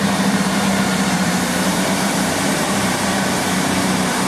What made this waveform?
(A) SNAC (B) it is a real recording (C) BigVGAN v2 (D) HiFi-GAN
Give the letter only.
C